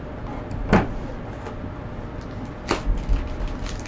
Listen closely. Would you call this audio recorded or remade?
recorded